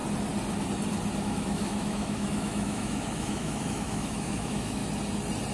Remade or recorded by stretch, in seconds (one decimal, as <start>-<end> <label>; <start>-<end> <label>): 0.0-1.2 recorded; 1.2-4.8 remade; 4.8-5.5 recorded